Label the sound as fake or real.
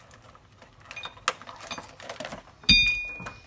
real